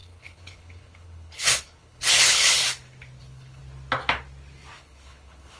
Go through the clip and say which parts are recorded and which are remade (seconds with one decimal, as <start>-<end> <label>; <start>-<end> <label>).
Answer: 0.0-2.6 remade; 2.6-3.2 recorded; 3.2-3.6 remade; 3.6-4.8 recorded; 4.8-5.6 remade